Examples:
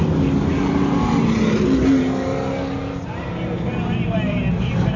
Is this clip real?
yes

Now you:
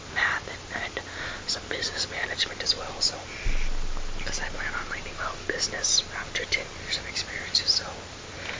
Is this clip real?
yes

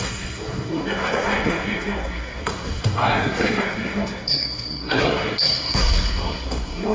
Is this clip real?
no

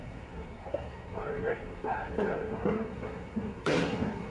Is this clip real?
no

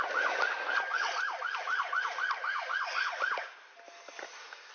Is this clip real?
yes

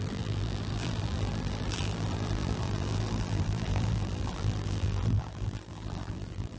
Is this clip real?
no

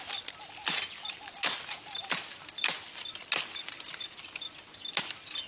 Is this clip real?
yes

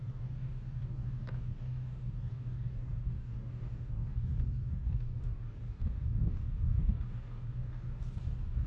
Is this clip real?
no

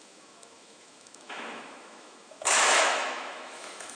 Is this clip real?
no